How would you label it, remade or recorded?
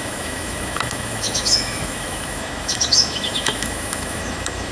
remade